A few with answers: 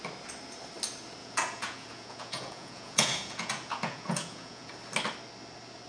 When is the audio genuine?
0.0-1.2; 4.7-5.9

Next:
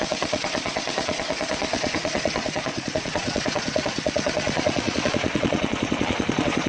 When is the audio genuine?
none